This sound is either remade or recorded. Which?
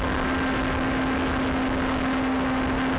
recorded